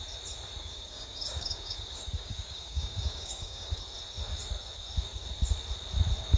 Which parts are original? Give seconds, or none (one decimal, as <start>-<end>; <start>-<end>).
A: 0.0-0.6; 3.8-6.4